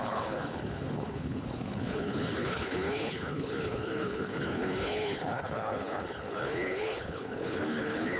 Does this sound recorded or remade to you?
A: remade